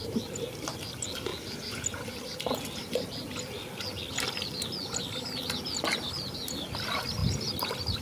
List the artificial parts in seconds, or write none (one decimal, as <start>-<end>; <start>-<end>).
none